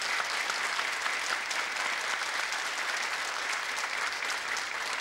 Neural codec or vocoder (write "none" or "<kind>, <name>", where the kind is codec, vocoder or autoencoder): none